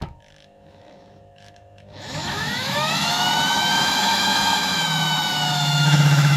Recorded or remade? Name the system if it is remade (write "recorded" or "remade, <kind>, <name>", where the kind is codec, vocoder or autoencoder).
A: remade, autoencoder, DAC-VAE